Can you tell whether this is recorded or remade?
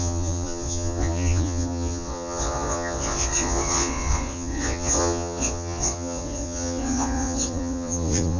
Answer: remade